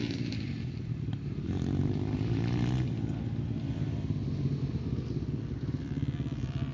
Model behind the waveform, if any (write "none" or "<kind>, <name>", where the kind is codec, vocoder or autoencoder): none